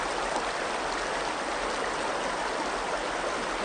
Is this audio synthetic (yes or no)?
no